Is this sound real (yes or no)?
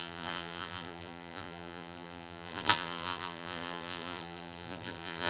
no